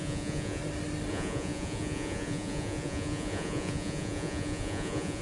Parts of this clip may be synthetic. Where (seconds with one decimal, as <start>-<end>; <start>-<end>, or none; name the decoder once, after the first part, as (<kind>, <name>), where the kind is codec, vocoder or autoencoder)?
0.0-0.6 (vocoder, Vocos); 1.1-5.2

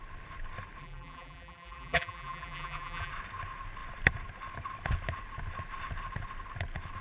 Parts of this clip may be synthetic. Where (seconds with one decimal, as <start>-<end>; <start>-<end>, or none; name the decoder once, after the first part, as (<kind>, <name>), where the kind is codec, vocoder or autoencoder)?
0.8-3.1 (vocoder, BigVGAN v2)

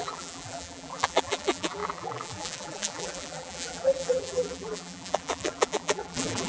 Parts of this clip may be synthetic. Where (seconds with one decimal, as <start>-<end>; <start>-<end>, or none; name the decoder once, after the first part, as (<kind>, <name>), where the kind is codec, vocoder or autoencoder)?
0.0-6.5 (vocoder, BigVGAN v2)

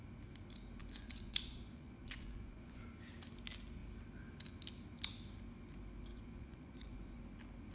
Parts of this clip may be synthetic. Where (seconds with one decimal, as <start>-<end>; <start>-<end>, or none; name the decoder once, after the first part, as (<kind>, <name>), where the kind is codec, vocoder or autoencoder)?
0.8-2.8 (vocoder, Vocos); 6.1-7.2

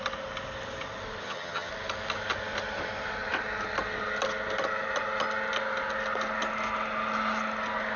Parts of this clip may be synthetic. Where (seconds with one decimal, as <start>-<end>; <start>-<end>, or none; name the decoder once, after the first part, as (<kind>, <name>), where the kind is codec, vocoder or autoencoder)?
1.2-1.7 (vocoder, HiFi-GAN)

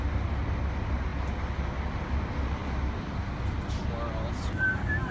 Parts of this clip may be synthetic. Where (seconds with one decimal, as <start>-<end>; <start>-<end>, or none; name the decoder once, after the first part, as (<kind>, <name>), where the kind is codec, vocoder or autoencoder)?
none